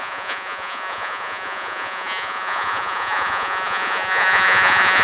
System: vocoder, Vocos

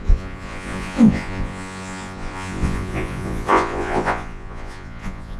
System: vocoder, Vocos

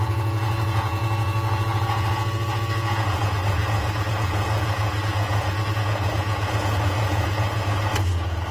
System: vocoder, Vocos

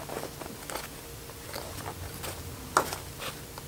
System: none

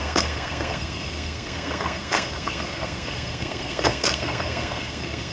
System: codec, SNAC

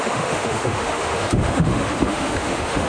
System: autoencoder, DAC-VAE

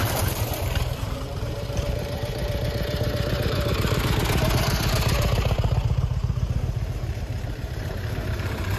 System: vocoder, BigVGAN v2